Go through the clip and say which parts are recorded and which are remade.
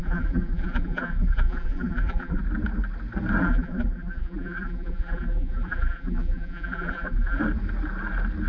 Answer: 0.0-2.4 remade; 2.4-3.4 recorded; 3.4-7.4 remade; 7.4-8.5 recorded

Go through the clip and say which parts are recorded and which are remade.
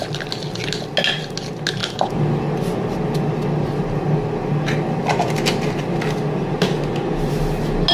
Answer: 0.0-7.9 recorded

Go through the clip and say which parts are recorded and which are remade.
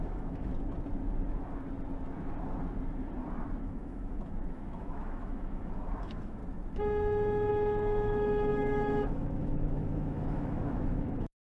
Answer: 0.0-0.5 remade; 0.5-3.6 recorded; 3.6-6.4 remade; 6.4-7.5 recorded; 7.5-11.5 remade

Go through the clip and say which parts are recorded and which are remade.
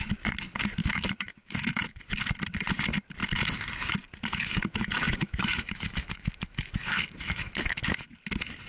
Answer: 0.0-0.8 recorded; 0.8-2.0 remade; 2.0-4.3 recorded; 4.3-8.2 remade; 8.2-8.7 recorded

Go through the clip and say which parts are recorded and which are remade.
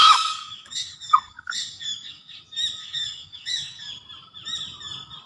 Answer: 0.0-2.4 remade; 2.4-2.8 recorded; 2.8-3.9 remade; 3.9-5.3 recorded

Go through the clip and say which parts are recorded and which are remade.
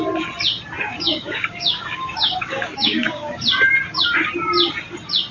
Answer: 0.0-0.9 recorded; 0.9-3.4 remade; 3.4-5.3 recorded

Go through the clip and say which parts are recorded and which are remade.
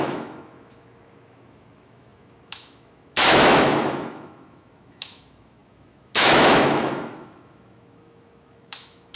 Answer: 0.0-9.2 remade